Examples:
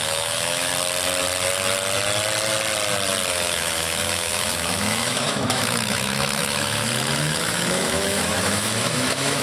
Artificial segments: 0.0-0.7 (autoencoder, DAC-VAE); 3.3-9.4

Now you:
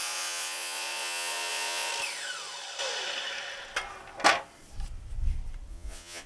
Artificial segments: 0.0-1.9 (vocoder, Vocos); 5.7-6.3

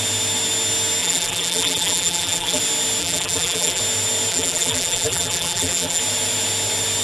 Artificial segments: 1.0-2.6 (vocoder, BigVGAN v2); 3.0-3.8; 4.3-6.0

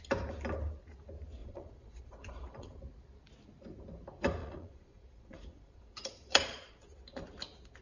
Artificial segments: 1.4-2.8 (vocoder, Vocos); 4.4-7.0

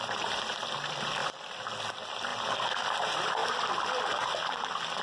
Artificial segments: 0.0-1.2 (vocoder, BigVGAN v2); 1.9-3.4; 4.3-5.0

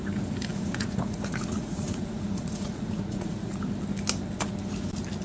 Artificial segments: 0.5-3.6 (vocoder, Vocos)